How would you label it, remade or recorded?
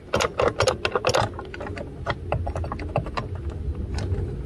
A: recorded